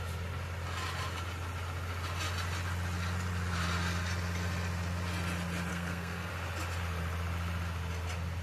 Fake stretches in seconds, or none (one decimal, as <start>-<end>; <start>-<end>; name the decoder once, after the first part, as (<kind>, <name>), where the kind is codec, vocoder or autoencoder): 5.7-6.3 (codec, SNAC)